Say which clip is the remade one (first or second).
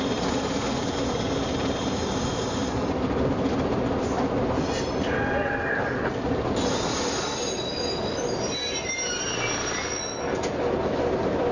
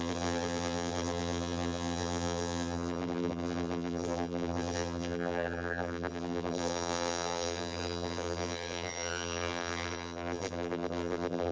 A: second